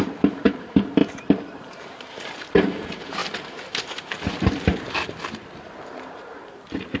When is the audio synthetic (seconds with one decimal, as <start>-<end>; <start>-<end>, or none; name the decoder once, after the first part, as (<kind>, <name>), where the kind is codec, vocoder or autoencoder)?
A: 0.0-3.2 (vocoder, BigVGAN v2); 3.8-7.0